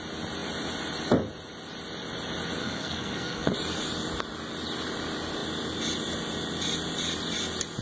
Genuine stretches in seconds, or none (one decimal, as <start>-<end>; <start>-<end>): 0.0-2.6; 3.5-7.8